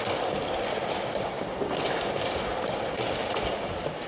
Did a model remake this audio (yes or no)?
no